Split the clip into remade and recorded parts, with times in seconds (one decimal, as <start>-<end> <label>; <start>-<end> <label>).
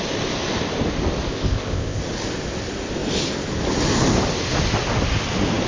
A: 0.0-1.3 recorded; 1.3-2.0 remade; 2.0-5.7 recorded